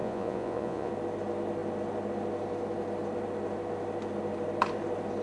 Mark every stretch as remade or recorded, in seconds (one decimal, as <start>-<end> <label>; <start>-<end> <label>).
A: 0.0-0.9 remade; 0.9-5.2 recorded